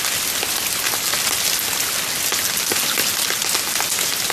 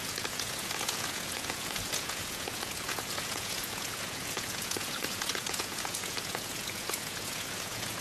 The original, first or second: first